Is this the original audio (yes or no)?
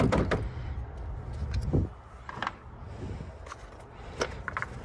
yes